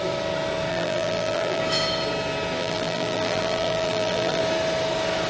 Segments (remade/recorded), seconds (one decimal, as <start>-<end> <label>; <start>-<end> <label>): 0.0-0.7 recorded; 0.7-1.6 remade; 1.6-2.6 recorded; 2.6-4.4 remade; 4.4-5.3 recorded

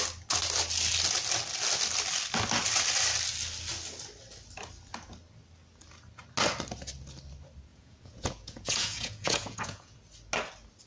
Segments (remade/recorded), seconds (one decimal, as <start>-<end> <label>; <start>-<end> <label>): 0.0-7.7 recorded; 7.7-10.0 remade; 10.0-10.9 recorded

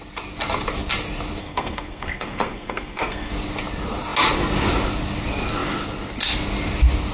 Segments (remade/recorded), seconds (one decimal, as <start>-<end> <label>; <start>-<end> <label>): 0.0-1.4 recorded; 1.4-3.3 remade; 3.3-7.1 recorded

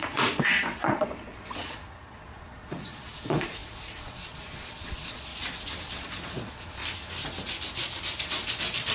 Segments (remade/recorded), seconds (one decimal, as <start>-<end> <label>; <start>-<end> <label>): 0.0-5.3 remade; 5.3-5.9 recorded; 5.9-6.8 remade; 6.8-8.9 recorded